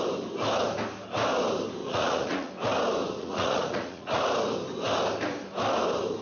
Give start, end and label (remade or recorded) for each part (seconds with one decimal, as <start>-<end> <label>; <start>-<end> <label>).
0.0-1.8 recorded; 1.8-2.5 remade; 2.5-3.2 recorded; 3.2-4.2 remade; 4.2-6.2 recorded